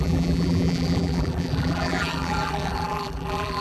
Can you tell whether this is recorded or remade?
remade